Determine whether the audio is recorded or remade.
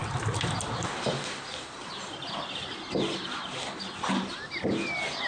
recorded